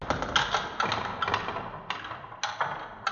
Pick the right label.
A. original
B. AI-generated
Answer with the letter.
A